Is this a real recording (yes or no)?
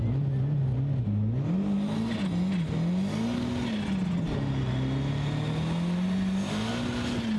yes